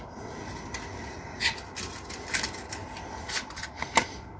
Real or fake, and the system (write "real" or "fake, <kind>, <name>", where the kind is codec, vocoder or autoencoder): real